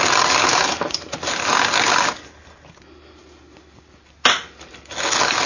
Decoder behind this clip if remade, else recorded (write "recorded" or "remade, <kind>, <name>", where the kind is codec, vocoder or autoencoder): recorded